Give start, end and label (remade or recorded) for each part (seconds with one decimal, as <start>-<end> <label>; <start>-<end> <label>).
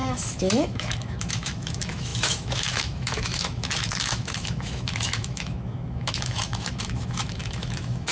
0.0-8.1 remade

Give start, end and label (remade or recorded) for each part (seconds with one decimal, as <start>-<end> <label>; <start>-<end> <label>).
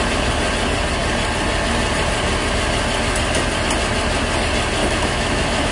0.0-4.8 recorded; 4.8-5.7 remade